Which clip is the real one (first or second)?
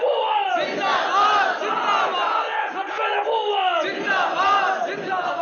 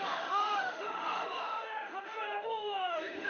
first